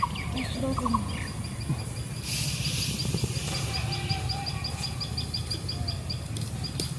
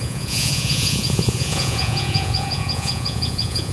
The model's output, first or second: second